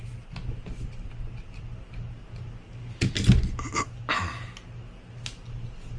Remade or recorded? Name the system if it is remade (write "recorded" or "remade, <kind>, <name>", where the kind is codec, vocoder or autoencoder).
recorded